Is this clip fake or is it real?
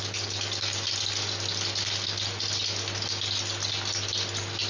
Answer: real